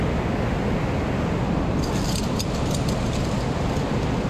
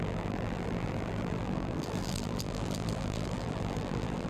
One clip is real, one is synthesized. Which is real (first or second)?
first